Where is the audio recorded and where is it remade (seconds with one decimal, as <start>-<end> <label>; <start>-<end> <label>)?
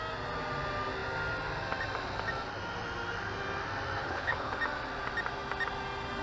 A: 0.0-4.0 recorded; 4.0-4.6 remade; 4.6-6.2 recorded